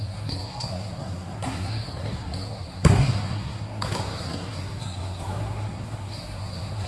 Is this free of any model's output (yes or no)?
no